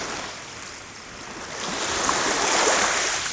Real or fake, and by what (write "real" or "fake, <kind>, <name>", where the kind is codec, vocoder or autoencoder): real